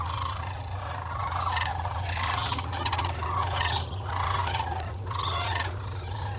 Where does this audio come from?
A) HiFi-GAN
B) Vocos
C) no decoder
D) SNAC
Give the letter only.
B